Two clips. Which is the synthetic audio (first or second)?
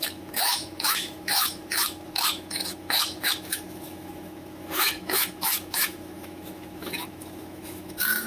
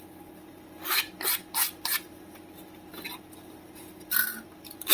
first